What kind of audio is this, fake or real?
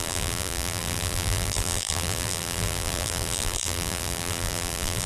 fake